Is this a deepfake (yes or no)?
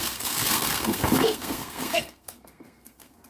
yes